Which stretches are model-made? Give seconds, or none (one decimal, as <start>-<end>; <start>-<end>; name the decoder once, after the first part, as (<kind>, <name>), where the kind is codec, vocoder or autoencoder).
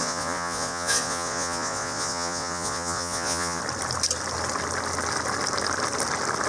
0.0-3.6 (vocoder, Vocos)